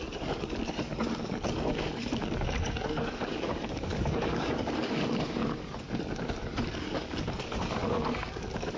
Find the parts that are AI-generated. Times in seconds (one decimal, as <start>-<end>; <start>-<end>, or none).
0.0-8.8